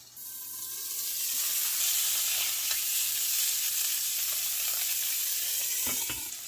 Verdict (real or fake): real